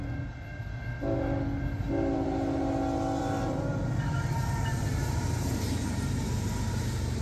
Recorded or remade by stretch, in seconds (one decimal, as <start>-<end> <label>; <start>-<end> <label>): 0.0-3.2 recorded; 3.2-7.2 remade